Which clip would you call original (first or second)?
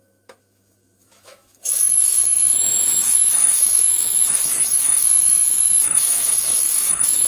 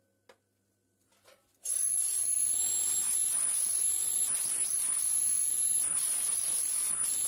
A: second